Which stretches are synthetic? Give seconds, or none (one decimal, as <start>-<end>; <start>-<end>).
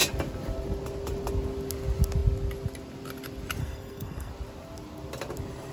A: 3.6-4.3